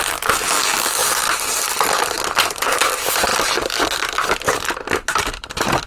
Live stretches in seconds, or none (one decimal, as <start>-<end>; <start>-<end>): 0.0-1.0; 1.6-3.3